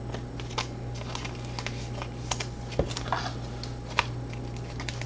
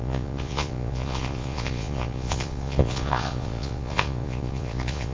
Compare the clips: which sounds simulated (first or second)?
second